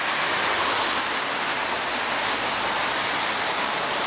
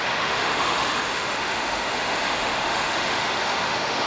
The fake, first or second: second